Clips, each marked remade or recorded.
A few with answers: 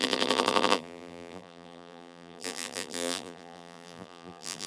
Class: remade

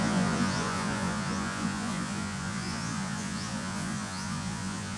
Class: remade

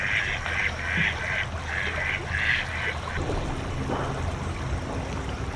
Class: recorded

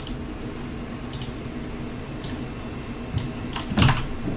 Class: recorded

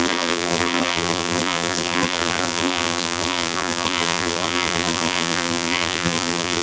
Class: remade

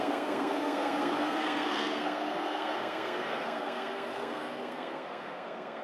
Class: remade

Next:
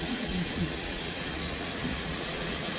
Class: remade